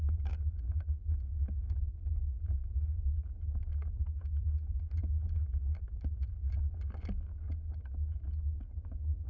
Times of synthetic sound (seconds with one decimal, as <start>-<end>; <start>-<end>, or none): 0.0-1.0; 1.9-5.0; 5.6-9.3